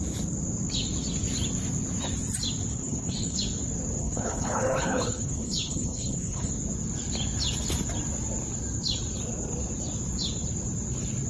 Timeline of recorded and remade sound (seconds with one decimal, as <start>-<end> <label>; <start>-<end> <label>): 0.0-2.7 recorded; 2.7-3.4 remade; 3.4-4.0 recorded; 4.0-6.5 remade; 6.5-11.3 recorded